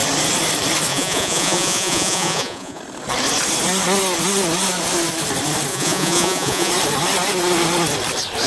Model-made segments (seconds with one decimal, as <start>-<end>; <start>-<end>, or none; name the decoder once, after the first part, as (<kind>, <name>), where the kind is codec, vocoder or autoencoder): 0.9-2.8 (vocoder, Vocos); 5.7-6.7